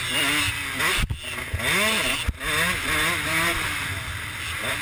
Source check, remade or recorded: recorded